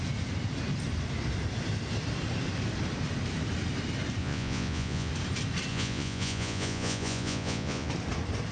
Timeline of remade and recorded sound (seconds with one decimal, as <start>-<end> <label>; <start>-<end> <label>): 0.0-4.2 recorded; 4.2-5.1 remade; 5.1-5.7 recorded; 5.7-7.9 remade; 7.9-8.5 recorded